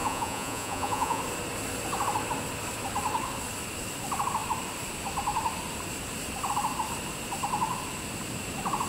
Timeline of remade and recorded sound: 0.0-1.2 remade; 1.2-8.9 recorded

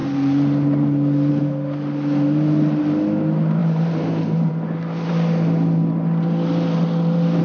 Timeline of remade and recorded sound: 0.0-3.6 recorded; 3.6-4.5 remade; 4.5-7.4 recorded

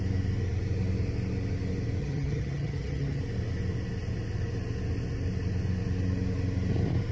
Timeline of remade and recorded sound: 0.0-2.0 recorded; 2.0-3.2 remade; 3.2-7.1 recorded

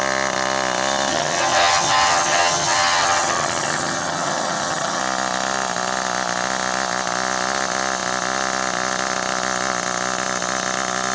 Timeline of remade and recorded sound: 0.0-1.1 recorded; 1.1-5.0 remade; 5.0-11.1 recorded

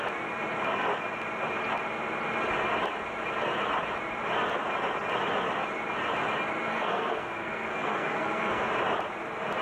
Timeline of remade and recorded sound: 0.0-6.7 recorded; 6.7-8.7 remade; 8.7-9.6 recorded

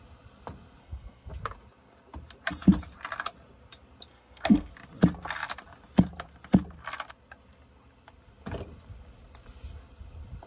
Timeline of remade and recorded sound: 0.0-0.8 recorded; 0.8-1.3 remade; 1.3-4.1 recorded; 4.1-4.7 remade; 4.7-10.5 recorded

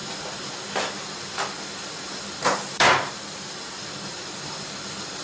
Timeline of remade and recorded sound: 0.0-5.2 recorded